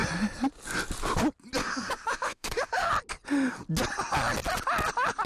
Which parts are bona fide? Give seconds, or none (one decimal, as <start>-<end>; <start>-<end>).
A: 0.0-1.6; 2.9-5.3